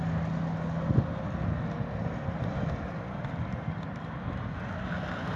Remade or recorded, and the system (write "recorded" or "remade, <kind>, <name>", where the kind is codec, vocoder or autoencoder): recorded